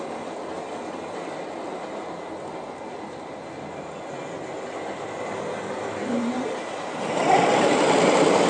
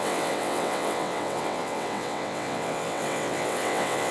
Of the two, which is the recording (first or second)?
first